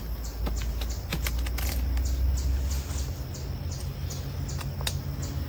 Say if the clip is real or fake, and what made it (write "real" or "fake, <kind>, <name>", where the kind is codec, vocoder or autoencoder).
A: real